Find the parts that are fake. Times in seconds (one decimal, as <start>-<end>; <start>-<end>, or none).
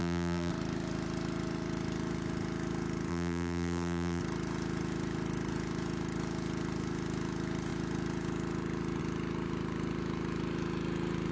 0.0-0.5; 3.1-4.2